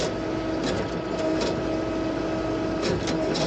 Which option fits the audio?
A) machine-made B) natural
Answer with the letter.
B